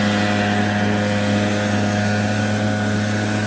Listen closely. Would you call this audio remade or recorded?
recorded